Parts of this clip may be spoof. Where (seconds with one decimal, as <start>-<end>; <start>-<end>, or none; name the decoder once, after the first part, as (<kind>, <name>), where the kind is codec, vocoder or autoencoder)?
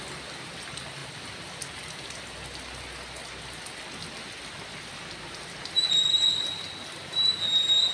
1.0-2.2 (vocoder, BigVGAN v2)